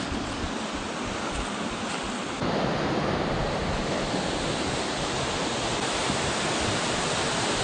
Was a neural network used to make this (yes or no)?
no